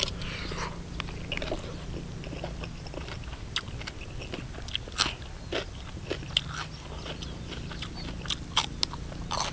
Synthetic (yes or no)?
no